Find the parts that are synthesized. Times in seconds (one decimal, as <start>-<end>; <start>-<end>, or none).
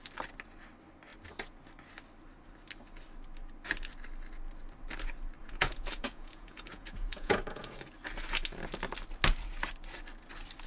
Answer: 5.4-7.9